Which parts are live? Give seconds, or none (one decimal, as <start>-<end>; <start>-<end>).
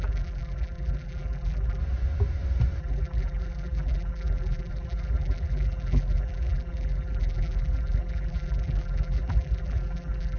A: 1.8-2.8